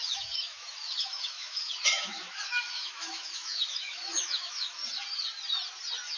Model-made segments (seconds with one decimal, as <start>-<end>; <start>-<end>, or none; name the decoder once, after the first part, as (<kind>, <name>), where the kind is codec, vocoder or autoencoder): 0.0-4.8 (autoencoder, DAC-VAE)